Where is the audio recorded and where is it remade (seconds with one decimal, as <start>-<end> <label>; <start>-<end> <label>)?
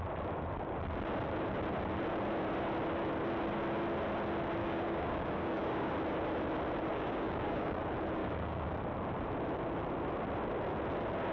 0.0-4.6 recorded; 4.6-5.9 remade; 5.9-6.9 recorded; 6.9-7.8 remade; 7.8-8.2 recorded; 8.2-8.7 remade; 8.7-11.3 recorded